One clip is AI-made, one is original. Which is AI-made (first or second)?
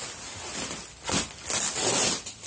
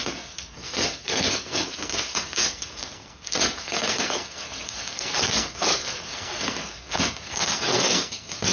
second